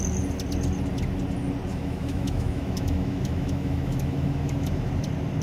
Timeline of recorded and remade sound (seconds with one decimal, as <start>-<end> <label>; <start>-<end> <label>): 0.0-1.7 recorded; 1.7-4.9 remade; 4.9-5.4 recorded